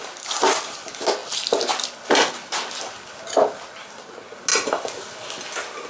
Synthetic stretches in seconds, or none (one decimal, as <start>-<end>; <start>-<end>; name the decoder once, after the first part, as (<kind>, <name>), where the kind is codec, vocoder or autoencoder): none